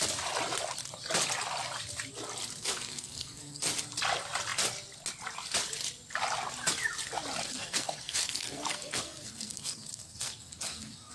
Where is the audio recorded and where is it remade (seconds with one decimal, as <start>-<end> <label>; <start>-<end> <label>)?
0.0-2.6 recorded; 2.6-3.7 remade; 3.7-7.4 recorded; 7.4-11.1 remade